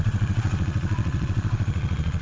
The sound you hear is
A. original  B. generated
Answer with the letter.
B